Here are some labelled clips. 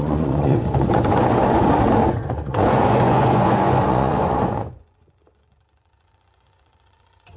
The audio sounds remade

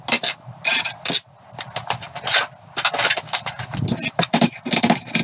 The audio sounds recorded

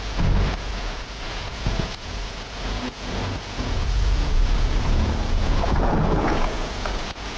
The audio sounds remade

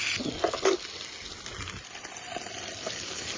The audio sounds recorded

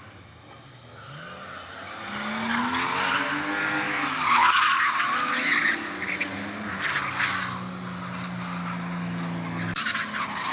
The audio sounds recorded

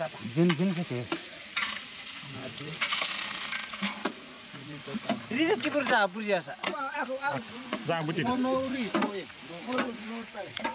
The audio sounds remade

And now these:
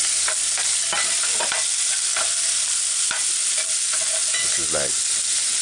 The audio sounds recorded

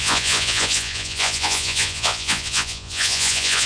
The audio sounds remade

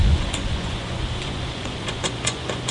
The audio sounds remade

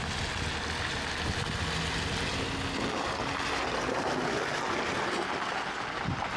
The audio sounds recorded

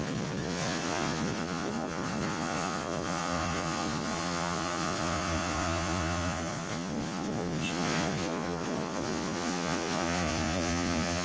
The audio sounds remade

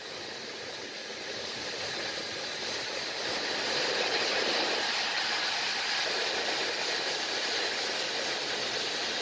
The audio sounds recorded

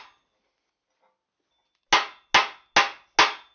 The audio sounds recorded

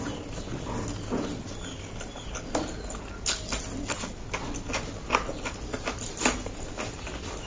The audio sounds recorded